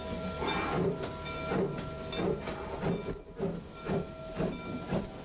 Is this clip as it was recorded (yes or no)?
yes